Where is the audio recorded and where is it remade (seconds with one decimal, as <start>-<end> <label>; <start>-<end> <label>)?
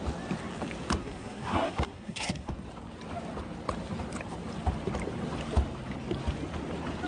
0.0-1.0 recorded; 1.0-2.5 remade; 2.5-7.1 recorded